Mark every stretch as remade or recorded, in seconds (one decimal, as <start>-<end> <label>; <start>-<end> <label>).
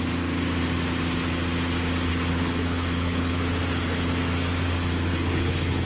0.0-2.1 recorded; 2.1-3.4 remade; 3.4-5.1 recorded; 5.1-5.9 remade